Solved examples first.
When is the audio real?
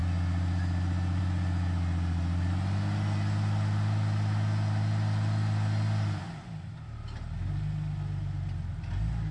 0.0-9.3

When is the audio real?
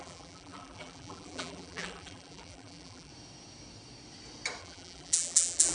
3.1-4.6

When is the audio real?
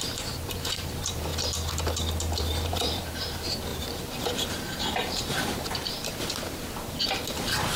1.3-2.4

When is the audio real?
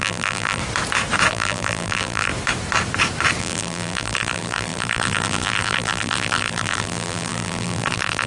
0.6-1.3; 2.3-3.4